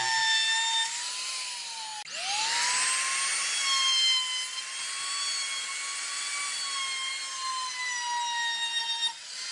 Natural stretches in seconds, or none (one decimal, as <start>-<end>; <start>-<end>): 0.0-9.5